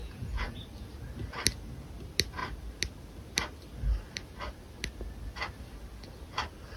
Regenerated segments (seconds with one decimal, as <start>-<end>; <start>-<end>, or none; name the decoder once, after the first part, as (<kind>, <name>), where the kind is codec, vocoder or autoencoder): 0.0-0.6 (vocoder, Vocos)